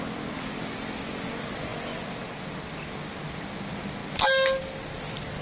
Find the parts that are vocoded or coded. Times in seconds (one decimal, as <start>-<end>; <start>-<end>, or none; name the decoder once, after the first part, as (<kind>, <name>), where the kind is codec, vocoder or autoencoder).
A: none